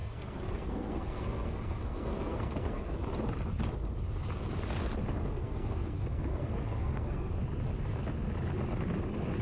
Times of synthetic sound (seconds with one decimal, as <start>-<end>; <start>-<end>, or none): 0.0-3.0; 5.2-7.3